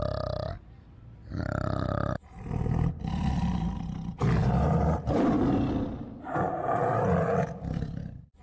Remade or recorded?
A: recorded